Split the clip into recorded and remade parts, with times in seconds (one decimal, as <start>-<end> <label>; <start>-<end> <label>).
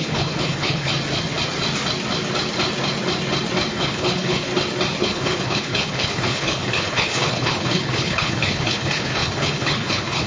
0.0-0.9 remade; 0.9-3.7 recorded; 3.7-4.5 remade; 4.5-5.0 recorded; 5.0-10.3 remade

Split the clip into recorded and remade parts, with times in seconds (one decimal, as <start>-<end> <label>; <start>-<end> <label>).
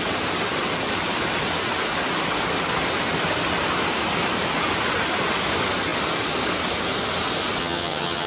0.0-7.6 recorded; 7.6-8.3 remade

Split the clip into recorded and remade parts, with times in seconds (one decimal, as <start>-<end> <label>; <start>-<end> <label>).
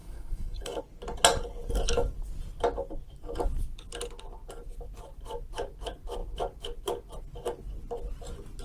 0.0-0.8 remade; 0.8-8.6 recorded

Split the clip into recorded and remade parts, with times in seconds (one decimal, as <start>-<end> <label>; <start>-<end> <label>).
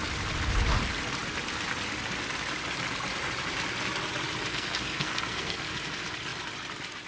0.0-4.5 recorded; 4.5-5.6 remade; 5.6-7.1 recorded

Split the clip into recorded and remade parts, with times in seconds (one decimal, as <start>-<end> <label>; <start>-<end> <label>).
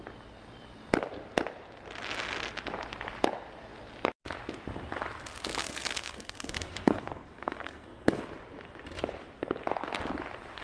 0.0-5.6 recorded; 5.6-8.2 remade; 8.2-10.6 recorded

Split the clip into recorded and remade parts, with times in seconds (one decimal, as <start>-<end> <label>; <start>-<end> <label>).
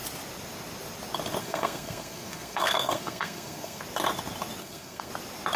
0.0-1.4 recorded; 1.4-3.8 remade; 3.8-4.6 recorded; 4.6-5.1 remade; 5.1-5.6 recorded